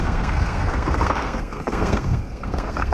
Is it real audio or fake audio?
fake